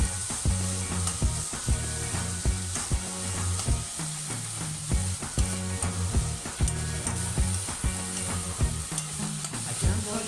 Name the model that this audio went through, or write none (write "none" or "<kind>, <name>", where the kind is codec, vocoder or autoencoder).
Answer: none